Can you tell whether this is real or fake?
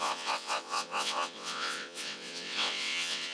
fake